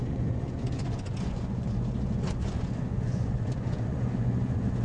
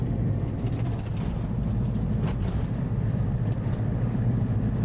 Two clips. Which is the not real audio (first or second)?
first